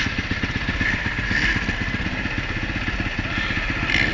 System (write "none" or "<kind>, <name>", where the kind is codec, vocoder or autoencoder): none